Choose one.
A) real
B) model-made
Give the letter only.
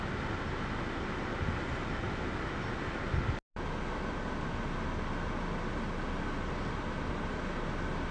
A